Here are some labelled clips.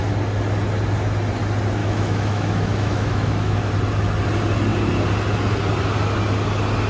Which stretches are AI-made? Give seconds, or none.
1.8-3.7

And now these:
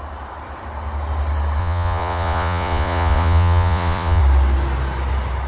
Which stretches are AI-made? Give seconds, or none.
1.6-4.2